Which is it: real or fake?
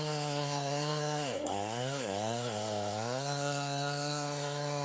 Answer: fake